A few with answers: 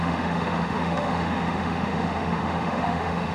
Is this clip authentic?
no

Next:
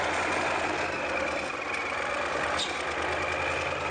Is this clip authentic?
yes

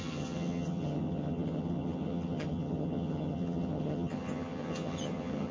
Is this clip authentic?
no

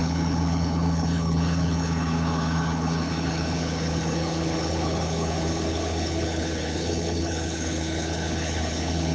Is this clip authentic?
no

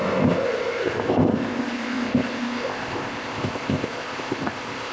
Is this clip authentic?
no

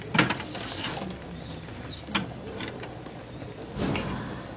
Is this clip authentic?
yes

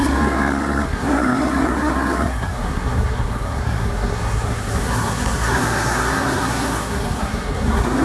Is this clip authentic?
no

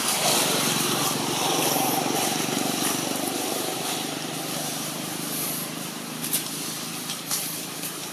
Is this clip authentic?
no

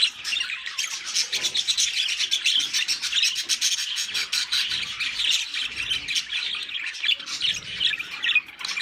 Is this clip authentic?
yes